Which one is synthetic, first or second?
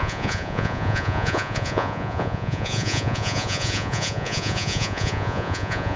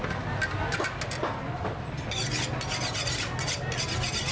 first